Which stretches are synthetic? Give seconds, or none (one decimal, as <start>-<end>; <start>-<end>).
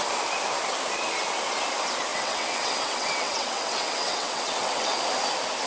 2.1-5.0